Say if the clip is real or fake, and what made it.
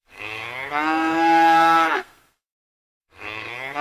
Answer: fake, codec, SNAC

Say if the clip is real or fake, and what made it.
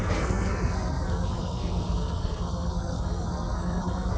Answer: fake, codec, SNAC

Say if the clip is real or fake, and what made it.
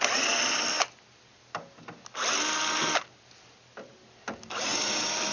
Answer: real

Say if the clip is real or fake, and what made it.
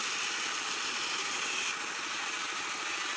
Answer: fake, vocoder, BigVGAN v2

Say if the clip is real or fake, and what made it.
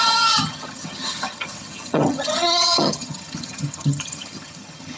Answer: fake, vocoder, HiFi-GAN